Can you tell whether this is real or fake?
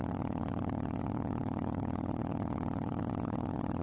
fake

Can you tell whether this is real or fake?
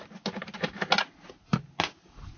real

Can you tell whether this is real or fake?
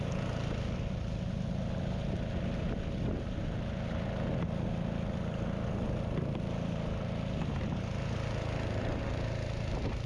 real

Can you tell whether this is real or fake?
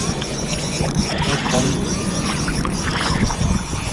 fake